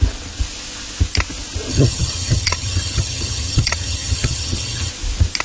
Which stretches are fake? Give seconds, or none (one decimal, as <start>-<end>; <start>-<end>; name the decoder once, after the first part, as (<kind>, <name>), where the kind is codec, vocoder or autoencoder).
1.7-4.9 (vocoder, HiFi-GAN)